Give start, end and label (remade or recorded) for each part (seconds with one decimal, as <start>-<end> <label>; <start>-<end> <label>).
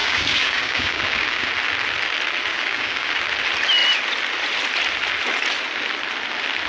0.0-1.5 remade; 1.5-2.5 recorded; 2.5-3.2 remade; 3.2-6.7 recorded